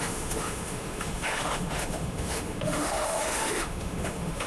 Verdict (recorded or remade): remade